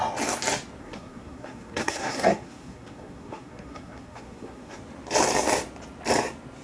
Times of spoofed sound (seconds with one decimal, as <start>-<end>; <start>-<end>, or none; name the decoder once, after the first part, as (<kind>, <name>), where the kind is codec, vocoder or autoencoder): 0.8-4.8 (codec, SNAC)